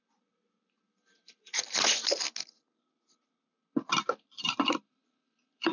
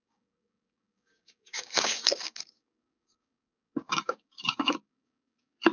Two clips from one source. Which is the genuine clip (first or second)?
first